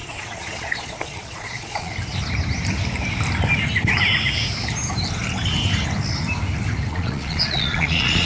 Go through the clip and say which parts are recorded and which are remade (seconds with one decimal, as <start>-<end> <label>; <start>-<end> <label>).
0.0-1.9 remade; 1.9-6.9 recorded; 6.9-8.3 remade

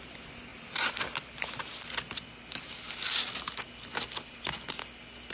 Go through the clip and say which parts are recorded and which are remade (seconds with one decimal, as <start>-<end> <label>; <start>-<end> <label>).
0.0-1.7 remade; 1.7-5.3 recorded

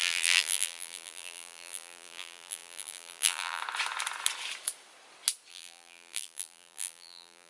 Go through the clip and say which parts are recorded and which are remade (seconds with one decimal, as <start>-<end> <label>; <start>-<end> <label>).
0.0-3.6 remade; 3.6-5.5 recorded; 5.5-7.5 remade

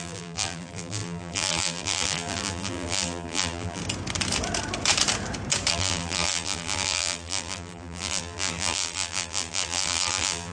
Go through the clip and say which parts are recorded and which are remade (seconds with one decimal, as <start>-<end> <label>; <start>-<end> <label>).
0.0-3.8 remade; 3.8-5.7 recorded; 5.7-10.5 remade